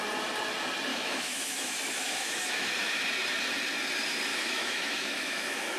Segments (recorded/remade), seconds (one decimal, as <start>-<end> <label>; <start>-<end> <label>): 0.0-0.9 recorded; 0.9-3.0 remade; 3.0-4.3 recorded; 4.3-5.8 remade